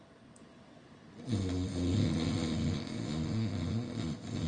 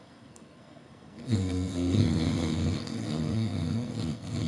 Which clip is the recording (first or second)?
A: first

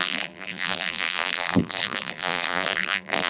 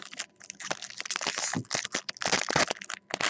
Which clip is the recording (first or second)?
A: second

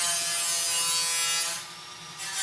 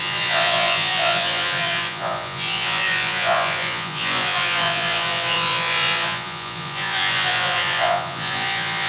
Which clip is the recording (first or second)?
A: first